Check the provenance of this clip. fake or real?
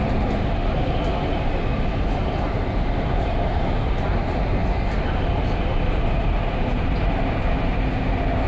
fake